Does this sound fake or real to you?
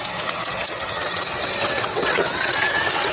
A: fake